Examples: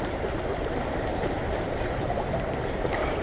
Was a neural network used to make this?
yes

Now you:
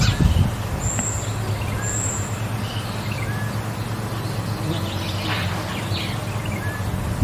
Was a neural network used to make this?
no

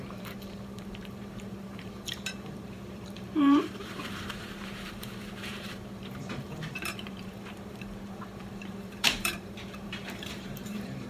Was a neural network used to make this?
yes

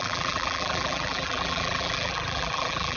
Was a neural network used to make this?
yes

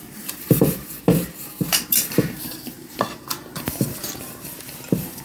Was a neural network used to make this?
yes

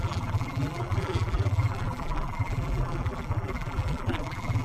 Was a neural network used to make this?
yes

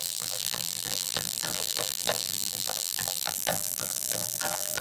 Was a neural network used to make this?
yes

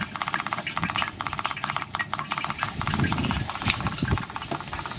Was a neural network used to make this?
yes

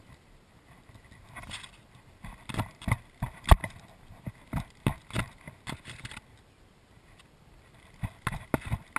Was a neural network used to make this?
no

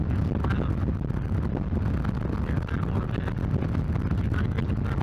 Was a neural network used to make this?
no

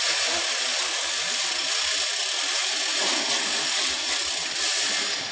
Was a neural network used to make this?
no